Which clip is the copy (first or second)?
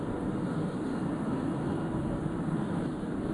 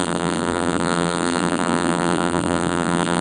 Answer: second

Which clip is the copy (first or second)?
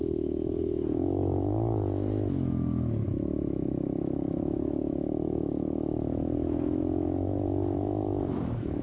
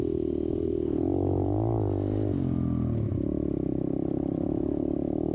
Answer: first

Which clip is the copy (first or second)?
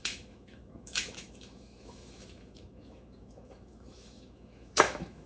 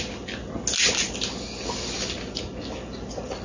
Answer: first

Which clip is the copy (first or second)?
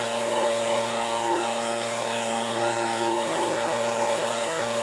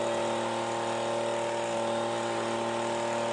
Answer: first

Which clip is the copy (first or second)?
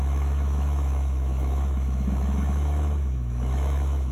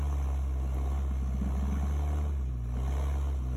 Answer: first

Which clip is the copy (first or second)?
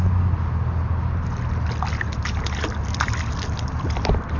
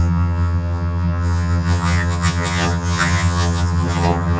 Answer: second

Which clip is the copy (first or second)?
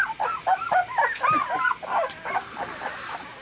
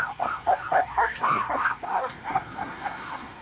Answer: second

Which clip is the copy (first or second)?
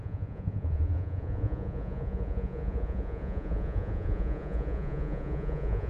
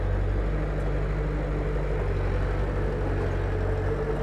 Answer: first